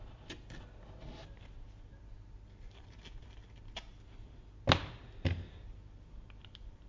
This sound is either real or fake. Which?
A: real